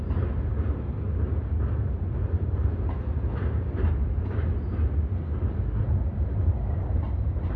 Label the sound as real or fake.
real